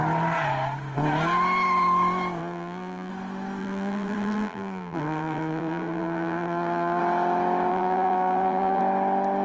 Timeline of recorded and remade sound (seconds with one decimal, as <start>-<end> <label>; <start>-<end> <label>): 0.0-2.4 recorded; 2.4-3.1 remade; 3.1-3.6 recorded; 3.6-7.0 remade; 7.0-7.7 recorded; 7.7-8.8 remade; 8.8-9.4 recorded